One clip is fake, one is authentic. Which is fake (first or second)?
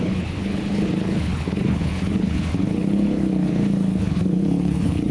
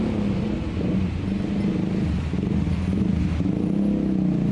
first